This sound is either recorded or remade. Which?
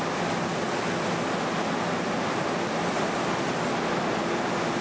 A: recorded